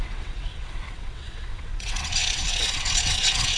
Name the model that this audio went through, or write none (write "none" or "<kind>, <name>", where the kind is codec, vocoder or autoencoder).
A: vocoder, WaveNeXt